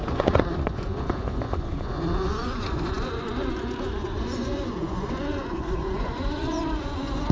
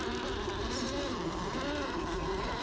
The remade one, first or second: first